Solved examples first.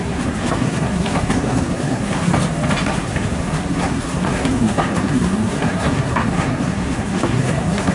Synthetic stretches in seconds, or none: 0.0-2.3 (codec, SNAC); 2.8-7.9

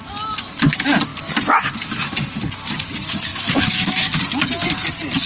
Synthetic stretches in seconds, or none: 3.3-4.0 (autoencoder, DAC-VAE)

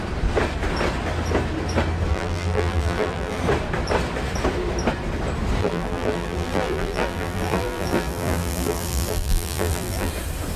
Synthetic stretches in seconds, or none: 2.1-3.4 (vocoder, BigVGAN v2); 5.6-10.1

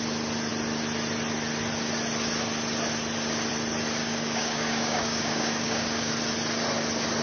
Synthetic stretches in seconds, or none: 4.0-6.1 (codec, DAC)

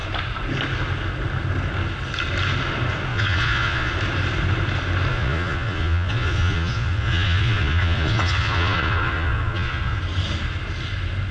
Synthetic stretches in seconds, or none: 3.1-3.9 (vocoder, Vocos); 5.1-10.0

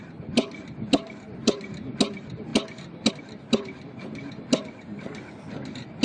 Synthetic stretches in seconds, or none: none